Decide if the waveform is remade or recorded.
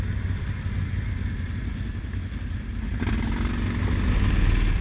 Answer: recorded